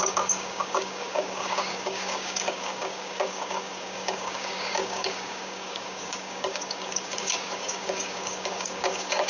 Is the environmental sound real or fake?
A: fake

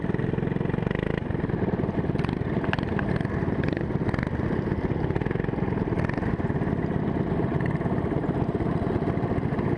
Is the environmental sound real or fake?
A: real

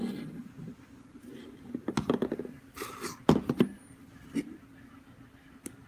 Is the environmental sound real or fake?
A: real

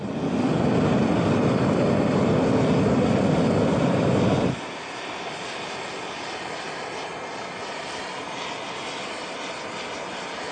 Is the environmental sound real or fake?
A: real